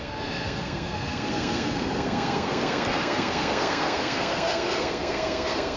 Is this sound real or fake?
fake